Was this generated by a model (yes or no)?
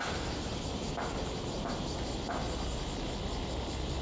no